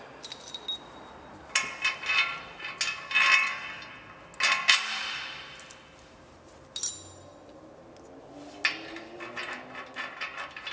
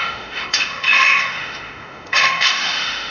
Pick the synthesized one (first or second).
second